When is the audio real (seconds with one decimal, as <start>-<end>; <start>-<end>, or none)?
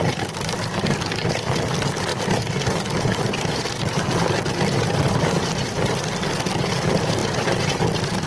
2.1-3.0; 7.2-8.3